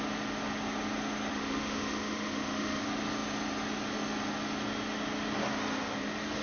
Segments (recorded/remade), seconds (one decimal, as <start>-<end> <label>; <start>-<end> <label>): 0.0-1.3 recorded; 1.3-2.8 remade; 2.8-6.4 recorded